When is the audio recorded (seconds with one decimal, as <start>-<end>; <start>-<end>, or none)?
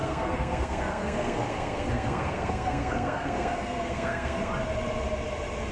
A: 4.5-5.7